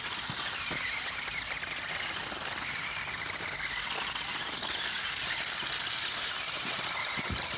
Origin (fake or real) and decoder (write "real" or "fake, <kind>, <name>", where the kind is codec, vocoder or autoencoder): real